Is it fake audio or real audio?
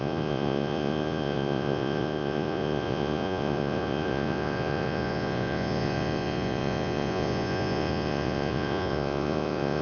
fake